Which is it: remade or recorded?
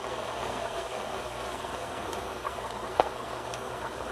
remade